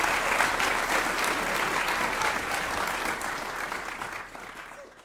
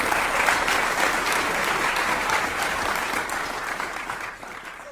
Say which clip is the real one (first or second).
first